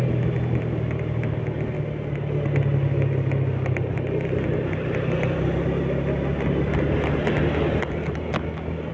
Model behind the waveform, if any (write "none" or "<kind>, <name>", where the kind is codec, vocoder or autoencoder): none